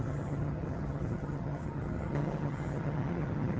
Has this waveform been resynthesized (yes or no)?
yes